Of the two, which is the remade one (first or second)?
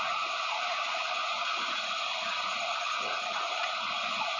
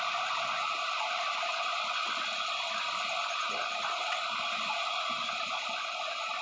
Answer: first